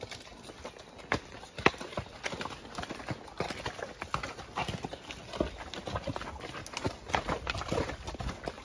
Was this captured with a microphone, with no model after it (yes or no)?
yes